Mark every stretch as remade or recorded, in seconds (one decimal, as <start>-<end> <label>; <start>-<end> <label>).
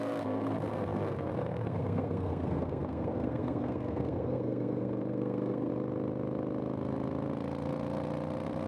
0.0-5.7 remade; 5.7-8.7 recorded